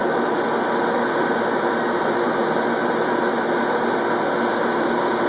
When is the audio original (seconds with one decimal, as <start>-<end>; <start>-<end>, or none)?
0.5-2.8; 3.4-5.3